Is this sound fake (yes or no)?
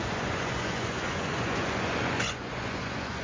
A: yes